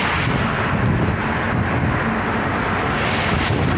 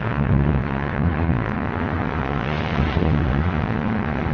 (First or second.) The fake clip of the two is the second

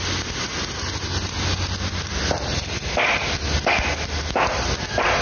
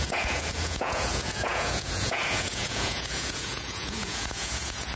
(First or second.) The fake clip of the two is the second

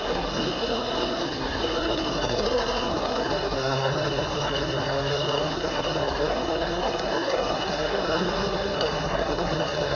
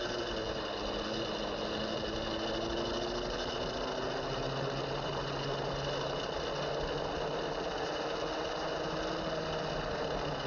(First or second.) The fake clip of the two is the first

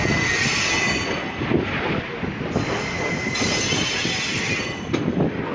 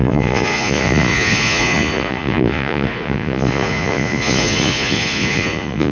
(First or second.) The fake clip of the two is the second